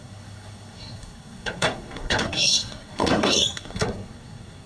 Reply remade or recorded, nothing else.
remade